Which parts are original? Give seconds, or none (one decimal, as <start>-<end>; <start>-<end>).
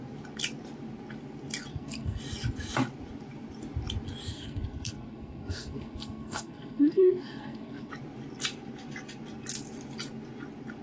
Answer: 0.0-1.7; 2.2-4.3; 7.9-10.8